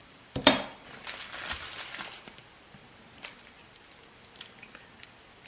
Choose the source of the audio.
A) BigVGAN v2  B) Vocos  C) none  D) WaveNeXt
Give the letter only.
A